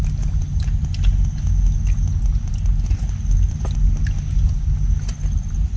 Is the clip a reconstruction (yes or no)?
no